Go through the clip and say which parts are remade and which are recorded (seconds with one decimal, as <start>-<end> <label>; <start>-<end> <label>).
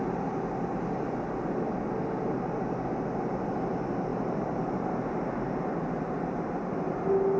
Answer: 0.0-4.1 recorded; 4.1-4.6 remade; 4.6-7.4 recorded